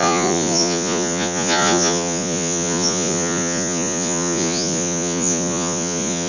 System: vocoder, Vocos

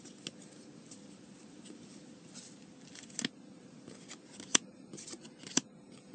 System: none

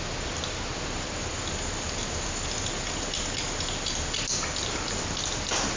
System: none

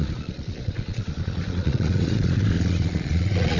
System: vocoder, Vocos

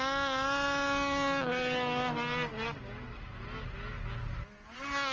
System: none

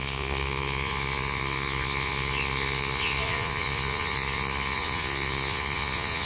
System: vocoder, Vocos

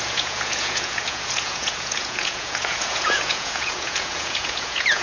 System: vocoder, Vocos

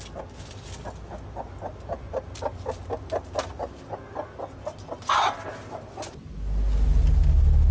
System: none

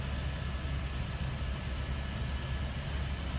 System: none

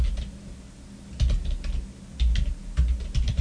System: none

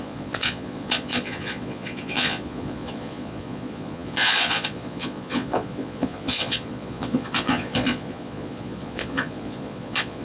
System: vocoder, Vocos